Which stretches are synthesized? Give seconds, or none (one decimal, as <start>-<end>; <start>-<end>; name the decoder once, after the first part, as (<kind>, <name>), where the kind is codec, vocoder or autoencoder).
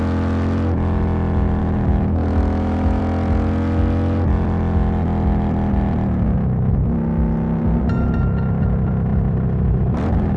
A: 1.6-3.0 (autoencoder, DAC-VAE)